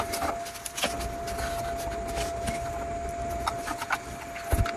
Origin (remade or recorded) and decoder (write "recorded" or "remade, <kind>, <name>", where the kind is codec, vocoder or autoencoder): recorded